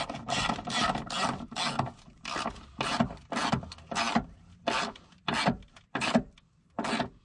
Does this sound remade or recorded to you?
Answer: recorded